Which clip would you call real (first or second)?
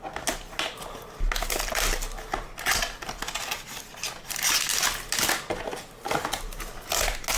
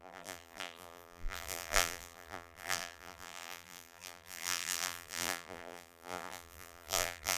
first